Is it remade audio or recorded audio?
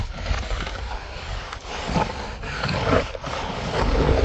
remade